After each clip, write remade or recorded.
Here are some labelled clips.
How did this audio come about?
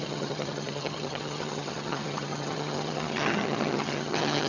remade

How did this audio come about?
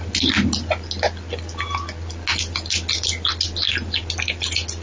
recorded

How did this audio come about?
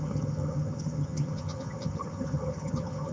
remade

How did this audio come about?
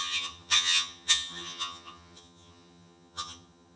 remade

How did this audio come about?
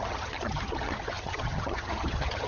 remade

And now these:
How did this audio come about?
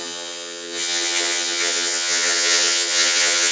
remade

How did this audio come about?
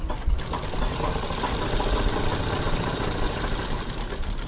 recorded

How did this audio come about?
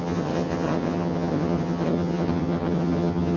remade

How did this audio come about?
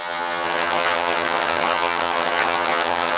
remade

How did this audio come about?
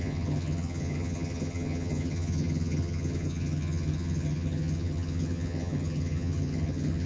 remade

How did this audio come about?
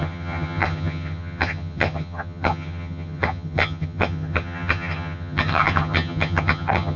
remade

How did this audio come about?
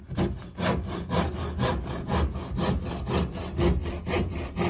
recorded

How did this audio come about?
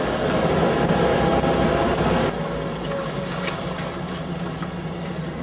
recorded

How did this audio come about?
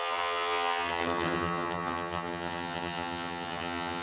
remade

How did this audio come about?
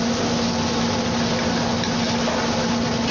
recorded